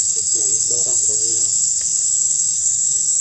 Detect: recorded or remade remade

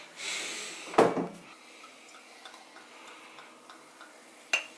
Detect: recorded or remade recorded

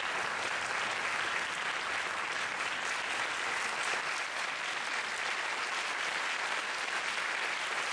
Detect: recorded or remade recorded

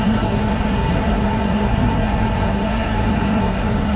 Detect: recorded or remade remade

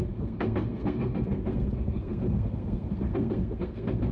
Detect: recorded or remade remade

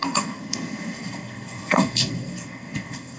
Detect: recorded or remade remade